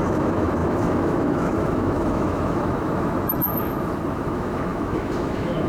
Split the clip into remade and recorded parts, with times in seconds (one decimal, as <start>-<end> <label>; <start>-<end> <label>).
0.0-3.5 remade; 3.5-4.3 recorded; 4.3-5.7 remade